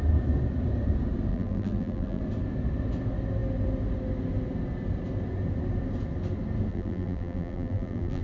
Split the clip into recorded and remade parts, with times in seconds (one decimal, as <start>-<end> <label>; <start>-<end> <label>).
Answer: 0.0-1.3 recorded; 1.3-2.2 remade; 2.2-6.7 recorded; 6.7-8.2 remade